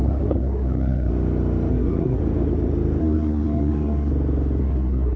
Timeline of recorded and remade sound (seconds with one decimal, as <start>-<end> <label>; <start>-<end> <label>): 0.0-1.1 remade; 1.1-1.7 recorded; 1.7-2.2 remade; 2.2-3.0 recorded; 3.0-4.1 remade; 4.1-4.6 recorded; 4.6-5.2 remade